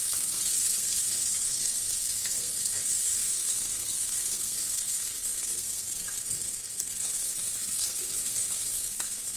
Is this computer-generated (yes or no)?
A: yes